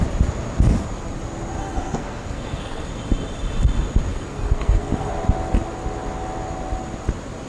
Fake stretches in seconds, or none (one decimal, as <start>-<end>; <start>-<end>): 1.6-3.0; 4.1-5.1